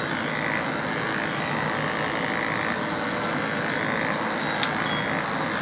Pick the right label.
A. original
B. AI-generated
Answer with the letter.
A